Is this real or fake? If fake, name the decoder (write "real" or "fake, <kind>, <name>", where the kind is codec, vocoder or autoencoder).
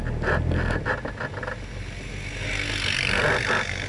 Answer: real